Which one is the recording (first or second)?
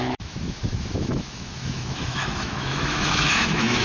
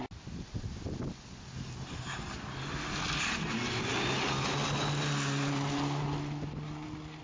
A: second